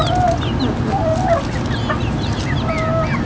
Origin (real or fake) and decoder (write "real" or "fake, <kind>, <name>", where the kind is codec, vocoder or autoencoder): real